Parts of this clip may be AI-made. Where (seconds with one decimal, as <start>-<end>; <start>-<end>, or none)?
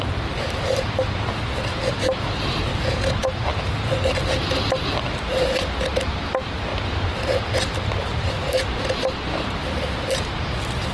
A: none